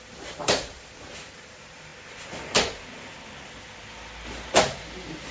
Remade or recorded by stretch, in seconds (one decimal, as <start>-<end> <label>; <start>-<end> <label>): 0.0-1.9 remade; 1.9-5.3 recorded